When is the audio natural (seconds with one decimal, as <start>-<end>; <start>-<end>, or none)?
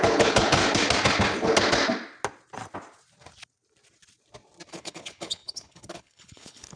0.6-4.7